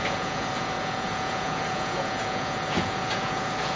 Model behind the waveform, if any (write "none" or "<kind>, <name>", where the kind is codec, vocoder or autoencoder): vocoder, Vocos